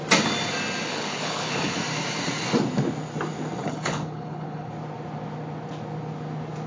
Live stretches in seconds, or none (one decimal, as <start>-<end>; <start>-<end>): 0.0-0.9; 1.7-3.6; 4.7-6.7